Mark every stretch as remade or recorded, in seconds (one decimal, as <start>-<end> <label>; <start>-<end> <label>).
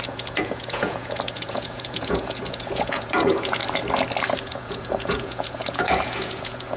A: 0.0-3.6 remade; 3.6-4.4 recorded; 4.4-6.8 remade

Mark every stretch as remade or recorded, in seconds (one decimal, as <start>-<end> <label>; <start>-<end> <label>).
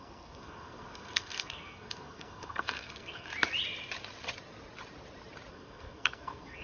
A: 0.0-3.3 remade; 3.3-5.5 recorded; 5.5-6.6 remade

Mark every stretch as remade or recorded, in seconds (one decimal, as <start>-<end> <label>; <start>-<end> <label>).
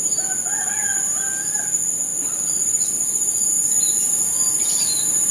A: 0.0-5.3 recorded